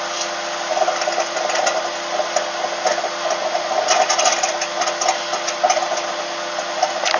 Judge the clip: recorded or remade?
recorded